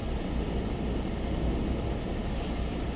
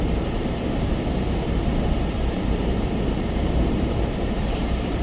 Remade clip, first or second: second